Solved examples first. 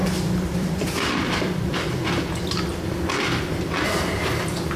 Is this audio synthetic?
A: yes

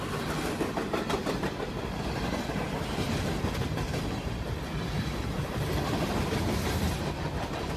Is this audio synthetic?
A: yes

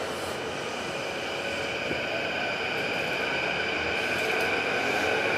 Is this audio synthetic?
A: no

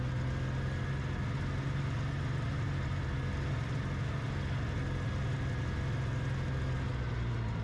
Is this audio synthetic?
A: no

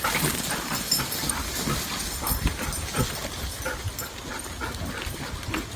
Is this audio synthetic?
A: no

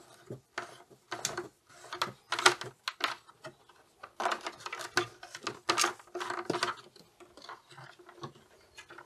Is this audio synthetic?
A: no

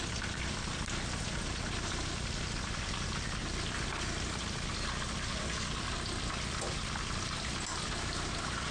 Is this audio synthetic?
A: no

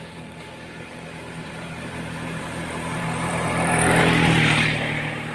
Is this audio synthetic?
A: yes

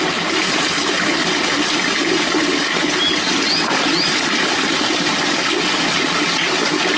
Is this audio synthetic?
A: no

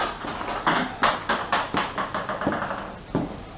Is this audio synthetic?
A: no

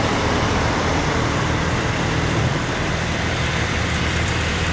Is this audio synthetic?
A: yes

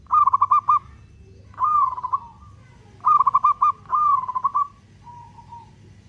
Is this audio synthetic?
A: no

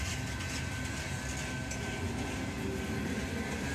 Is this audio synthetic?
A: no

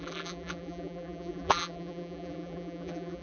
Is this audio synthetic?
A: yes